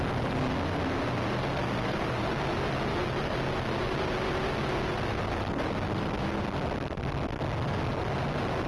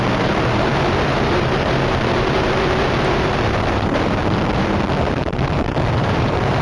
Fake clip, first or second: second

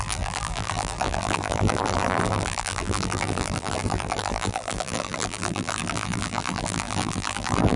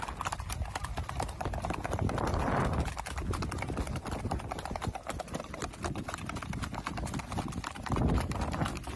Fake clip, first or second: first